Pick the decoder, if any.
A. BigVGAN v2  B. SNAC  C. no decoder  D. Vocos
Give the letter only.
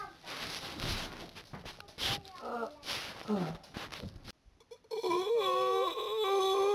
C